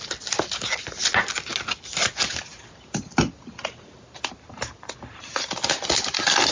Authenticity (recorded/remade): recorded